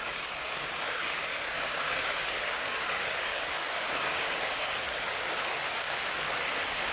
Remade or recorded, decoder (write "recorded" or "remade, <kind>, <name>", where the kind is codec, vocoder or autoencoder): remade, codec, DAC